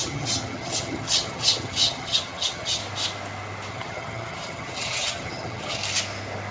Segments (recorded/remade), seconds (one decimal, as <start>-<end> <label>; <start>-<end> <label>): 0.0-2.8 remade; 2.8-3.7 recorded; 3.7-5.8 remade; 5.8-6.5 recorded